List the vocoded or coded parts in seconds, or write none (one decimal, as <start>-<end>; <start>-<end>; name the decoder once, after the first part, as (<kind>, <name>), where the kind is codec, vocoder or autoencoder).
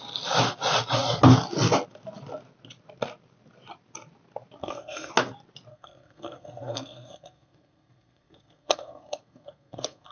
4.6-5.1 (codec, SNAC); 5.7-10.1